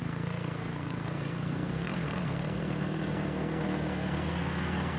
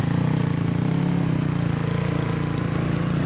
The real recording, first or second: second